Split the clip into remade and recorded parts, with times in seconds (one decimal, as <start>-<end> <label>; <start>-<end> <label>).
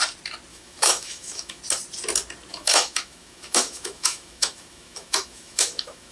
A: 0.0-0.5 recorded; 0.5-1.6 remade; 1.6-2.5 recorded; 2.5-6.1 remade